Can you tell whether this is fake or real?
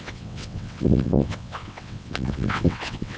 fake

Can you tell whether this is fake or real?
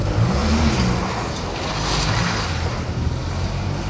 real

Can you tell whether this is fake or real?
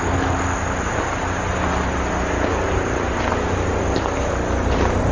real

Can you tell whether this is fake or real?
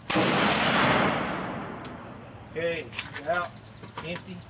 real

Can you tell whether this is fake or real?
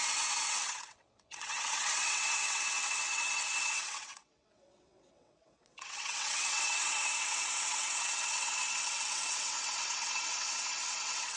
fake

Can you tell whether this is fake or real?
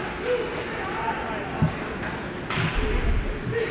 real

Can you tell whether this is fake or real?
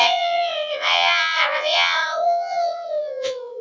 fake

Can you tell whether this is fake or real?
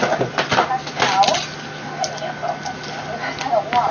real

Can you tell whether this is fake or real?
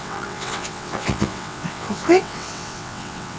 fake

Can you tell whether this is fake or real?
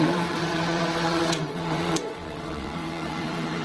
fake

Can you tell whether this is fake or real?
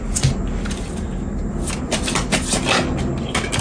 real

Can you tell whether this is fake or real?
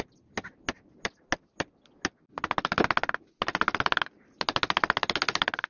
real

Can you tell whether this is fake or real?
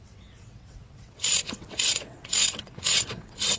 fake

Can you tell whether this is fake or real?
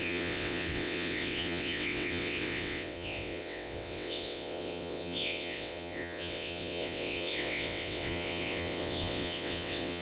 fake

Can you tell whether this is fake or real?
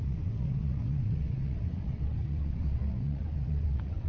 fake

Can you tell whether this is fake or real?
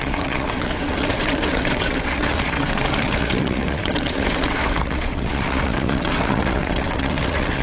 fake